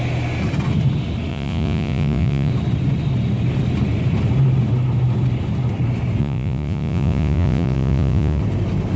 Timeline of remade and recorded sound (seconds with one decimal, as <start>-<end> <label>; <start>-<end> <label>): 0.0-1.3 recorded; 1.3-2.5 remade; 2.5-6.2 recorded; 6.2-8.4 remade; 8.4-9.0 recorded